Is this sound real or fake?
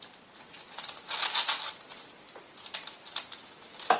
real